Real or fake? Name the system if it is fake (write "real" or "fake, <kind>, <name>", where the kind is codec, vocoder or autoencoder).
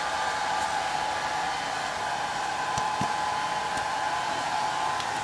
fake, vocoder, BigVGAN v2